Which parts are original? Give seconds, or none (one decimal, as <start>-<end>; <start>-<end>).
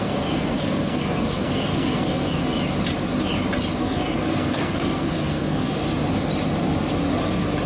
2.4-3.8; 5.8-7.7